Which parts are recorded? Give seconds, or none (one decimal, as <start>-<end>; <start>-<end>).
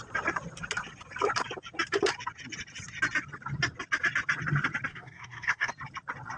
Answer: 0.0-4.9; 5.7-6.4